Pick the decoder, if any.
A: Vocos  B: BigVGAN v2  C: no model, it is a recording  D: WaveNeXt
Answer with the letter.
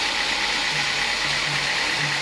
C